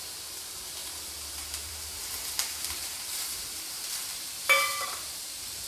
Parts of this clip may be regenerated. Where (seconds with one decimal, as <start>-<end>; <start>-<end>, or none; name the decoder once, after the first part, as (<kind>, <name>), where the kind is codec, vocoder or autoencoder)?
0.8-2.1 (vocoder, BigVGAN v2); 2.6-5.2